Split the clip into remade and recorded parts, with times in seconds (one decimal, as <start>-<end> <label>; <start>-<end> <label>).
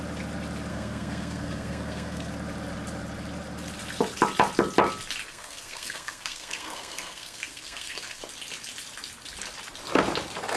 0.0-0.7 recorded; 0.7-2.3 remade; 2.3-5.3 recorded; 5.3-8.2 remade; 8.2-10.6 recorded